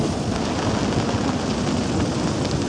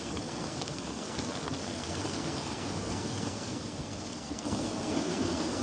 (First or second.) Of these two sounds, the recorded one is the first